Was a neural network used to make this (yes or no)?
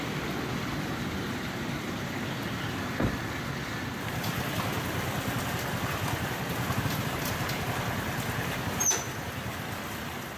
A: no